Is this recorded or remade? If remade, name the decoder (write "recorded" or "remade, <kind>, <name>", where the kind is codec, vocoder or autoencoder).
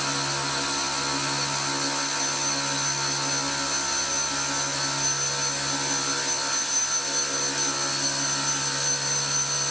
recorded